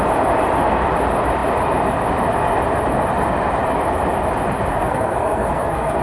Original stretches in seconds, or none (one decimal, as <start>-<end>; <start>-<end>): 0.0-4.7